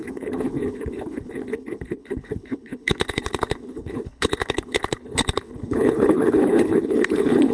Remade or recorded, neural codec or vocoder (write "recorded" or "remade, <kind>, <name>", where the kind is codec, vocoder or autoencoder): remade, codec, HILCodec